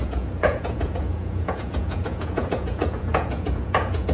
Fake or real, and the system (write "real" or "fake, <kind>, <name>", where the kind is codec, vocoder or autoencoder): fake, vocoder, Vocos